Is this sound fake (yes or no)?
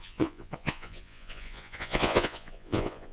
yes